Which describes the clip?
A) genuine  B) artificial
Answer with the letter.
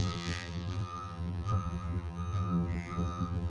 B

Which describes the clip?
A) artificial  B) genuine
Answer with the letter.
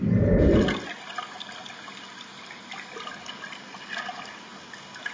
B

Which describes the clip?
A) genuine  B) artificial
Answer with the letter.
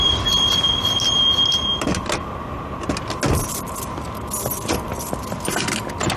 A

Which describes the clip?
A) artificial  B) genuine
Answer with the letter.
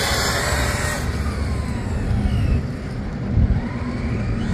B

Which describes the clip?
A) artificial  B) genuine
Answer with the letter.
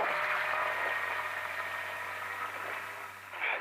B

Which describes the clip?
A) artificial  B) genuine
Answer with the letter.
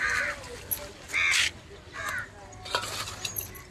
B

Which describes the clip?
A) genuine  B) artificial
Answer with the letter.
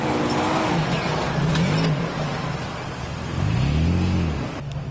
A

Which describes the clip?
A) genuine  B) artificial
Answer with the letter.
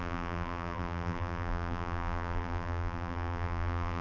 B